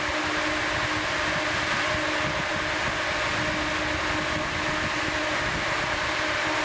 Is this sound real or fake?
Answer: real